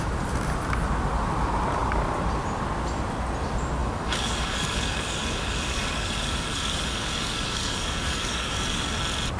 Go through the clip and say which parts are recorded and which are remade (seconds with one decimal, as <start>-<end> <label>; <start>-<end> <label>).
0.0-3.8 recorded; 3.8-9.0 remade; 9.0-9.4 recorded